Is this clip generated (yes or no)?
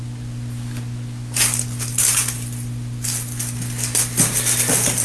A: no